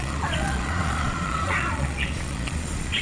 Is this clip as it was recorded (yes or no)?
no